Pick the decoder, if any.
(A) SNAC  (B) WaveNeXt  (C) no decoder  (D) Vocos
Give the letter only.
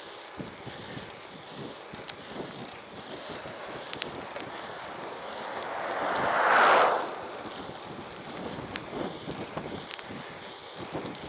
C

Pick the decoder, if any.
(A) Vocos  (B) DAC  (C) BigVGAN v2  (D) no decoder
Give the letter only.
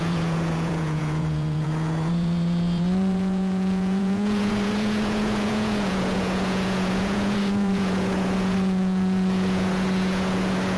A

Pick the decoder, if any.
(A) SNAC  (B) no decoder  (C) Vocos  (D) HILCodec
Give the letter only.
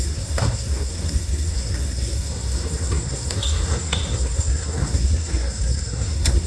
A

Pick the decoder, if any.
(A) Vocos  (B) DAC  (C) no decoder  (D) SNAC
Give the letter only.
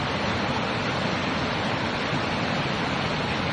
C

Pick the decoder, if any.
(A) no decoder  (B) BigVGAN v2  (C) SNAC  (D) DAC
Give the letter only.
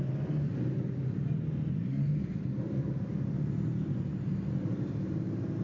A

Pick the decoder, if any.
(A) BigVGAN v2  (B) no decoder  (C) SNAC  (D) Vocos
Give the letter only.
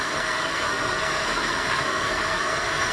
C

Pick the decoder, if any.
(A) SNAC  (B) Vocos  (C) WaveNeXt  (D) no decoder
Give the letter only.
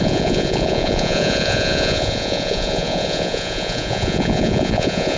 B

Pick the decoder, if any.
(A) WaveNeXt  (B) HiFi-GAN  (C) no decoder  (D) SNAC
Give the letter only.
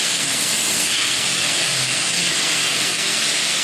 D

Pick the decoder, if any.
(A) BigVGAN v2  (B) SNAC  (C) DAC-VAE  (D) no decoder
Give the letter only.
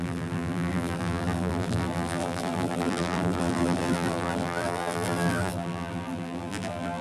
A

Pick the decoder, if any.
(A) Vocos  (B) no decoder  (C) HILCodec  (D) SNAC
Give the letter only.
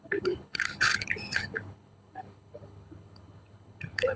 C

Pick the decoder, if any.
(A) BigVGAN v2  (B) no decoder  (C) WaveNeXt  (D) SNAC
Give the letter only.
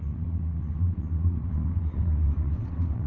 C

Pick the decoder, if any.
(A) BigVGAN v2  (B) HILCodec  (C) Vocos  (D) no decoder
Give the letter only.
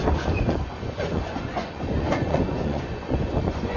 C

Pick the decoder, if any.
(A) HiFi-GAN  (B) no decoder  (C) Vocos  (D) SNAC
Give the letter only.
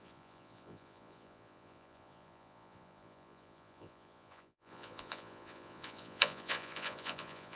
C